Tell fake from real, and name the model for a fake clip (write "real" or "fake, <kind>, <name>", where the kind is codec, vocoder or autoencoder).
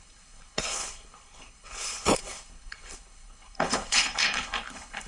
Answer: fake, codec, HILCodec